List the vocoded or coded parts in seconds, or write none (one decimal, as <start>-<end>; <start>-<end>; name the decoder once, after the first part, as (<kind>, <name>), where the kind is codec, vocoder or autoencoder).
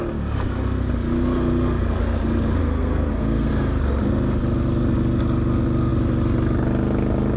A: 2.6-3.5 (codec, SNAC)